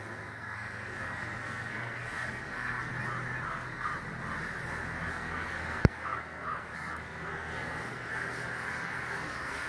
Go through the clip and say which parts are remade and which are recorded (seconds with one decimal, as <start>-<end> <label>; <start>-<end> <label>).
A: 0.0-2.9 remade; 2.9-3.5 recorded; 3.5-3.9 remade; 3.9-5.1 recorded; 5.1-9.7 remade

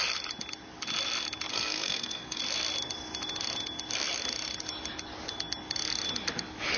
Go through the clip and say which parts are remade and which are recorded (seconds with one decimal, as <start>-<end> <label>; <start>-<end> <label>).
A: 0.0-1.5 recorded; 1.5-2.4 remade; 2.4-6.8 recorded